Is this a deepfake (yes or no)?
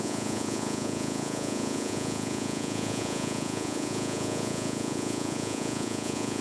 yes